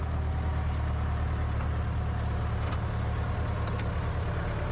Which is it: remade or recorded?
recorded